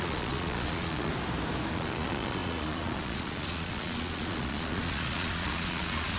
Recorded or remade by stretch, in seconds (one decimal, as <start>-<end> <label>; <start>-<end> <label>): 0.0-1.1 remade; 1.1-1.7 recorded; 1.7-6.2 remade